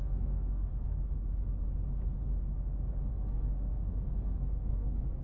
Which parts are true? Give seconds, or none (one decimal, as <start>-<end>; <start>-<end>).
0.7-3.1